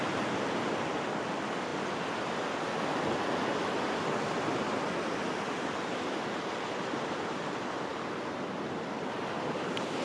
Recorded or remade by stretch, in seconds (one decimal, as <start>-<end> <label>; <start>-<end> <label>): 0.0-7.9 recorded; 7.9-9.1 remade; 9.1-10.0 recorded

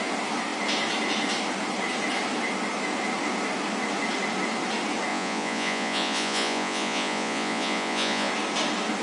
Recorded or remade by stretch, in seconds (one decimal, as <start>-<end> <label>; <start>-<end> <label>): 0.0-5.1 recorded; 5.1-8.3 remade; 8.3-9.0 recorded

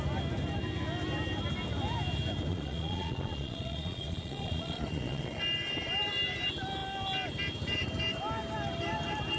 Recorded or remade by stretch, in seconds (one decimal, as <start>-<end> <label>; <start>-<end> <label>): 0.0-2.5 recorded; 2.5-5.4 remade; 5.4-9.4 recorded